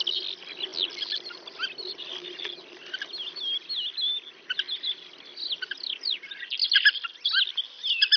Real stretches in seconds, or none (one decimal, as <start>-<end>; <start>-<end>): 0.0-8.2